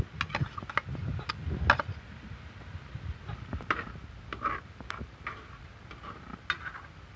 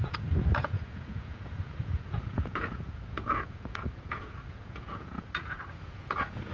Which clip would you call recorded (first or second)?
first